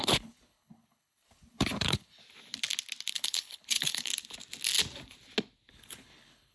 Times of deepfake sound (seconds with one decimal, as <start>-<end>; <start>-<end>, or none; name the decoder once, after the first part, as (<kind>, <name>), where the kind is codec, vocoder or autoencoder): 0.0-2.2 (codec, HILCodec); 3.1-4.1; 5.7-6.5